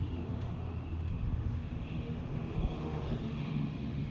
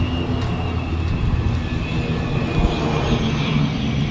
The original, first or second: second